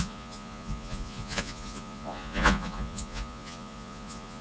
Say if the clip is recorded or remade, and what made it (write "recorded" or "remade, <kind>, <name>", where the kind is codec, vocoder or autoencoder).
remade, vocoder, Vocos